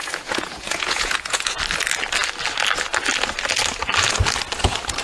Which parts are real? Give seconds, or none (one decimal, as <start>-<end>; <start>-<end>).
1.6-5.0